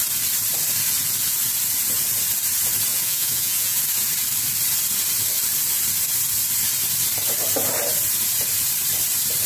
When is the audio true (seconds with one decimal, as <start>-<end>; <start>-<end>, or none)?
0.0-2.9; 3.8-9.5